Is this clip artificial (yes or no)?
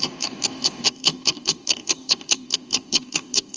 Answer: yes